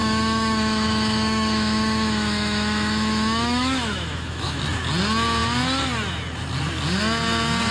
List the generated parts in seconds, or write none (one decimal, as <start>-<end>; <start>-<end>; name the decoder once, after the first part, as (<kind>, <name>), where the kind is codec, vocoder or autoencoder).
0.0-4.6 (autoencoder, DAC-VAE)